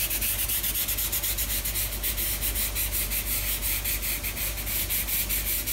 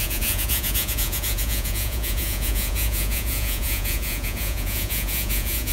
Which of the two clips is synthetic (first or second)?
second